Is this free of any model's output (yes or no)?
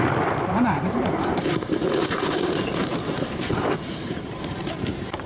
no